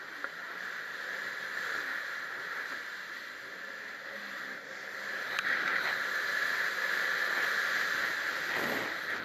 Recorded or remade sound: recorded